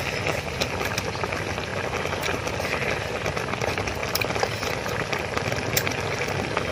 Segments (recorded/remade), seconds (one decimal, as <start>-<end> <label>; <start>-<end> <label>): 0.0-4.0 recorded; 4.0-6.3 remade; 6.3-6.7 recorded